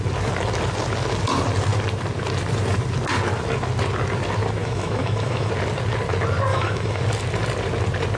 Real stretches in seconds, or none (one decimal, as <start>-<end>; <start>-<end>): 0.0-4.6; 5.5-6.5; 7.0-8.2